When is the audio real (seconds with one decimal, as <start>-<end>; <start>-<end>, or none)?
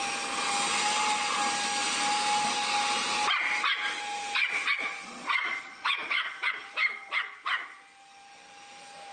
0.0-4.4; 6.5-9.1